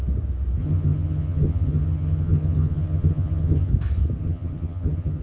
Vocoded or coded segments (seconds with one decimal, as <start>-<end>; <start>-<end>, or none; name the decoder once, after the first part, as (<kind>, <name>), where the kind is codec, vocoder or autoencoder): 0.6-3.7 (vocoder, HiFi-GAN); 4.2-5.2